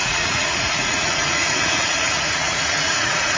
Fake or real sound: fake